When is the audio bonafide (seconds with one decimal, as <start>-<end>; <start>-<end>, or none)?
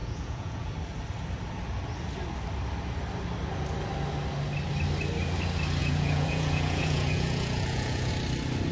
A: 0.7-5.8; 8.1-8.7